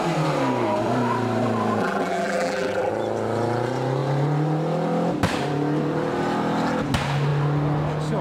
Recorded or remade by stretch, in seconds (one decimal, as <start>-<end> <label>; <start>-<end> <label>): 0.0-1.8 recorded; 1.8-2.9 remade; 2.9-8.2 recorded